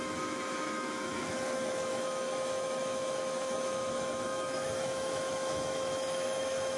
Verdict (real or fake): fake